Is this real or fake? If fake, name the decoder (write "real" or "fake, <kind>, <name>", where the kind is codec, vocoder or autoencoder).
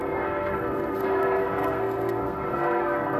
fake, codec, SNAC